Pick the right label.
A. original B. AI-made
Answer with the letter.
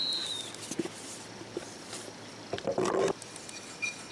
B